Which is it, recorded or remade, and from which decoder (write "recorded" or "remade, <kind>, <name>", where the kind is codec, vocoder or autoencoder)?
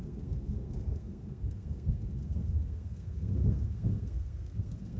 remade, codec, SNAC